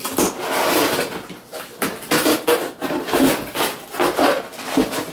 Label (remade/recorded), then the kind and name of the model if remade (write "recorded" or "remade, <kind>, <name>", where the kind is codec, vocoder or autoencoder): recorded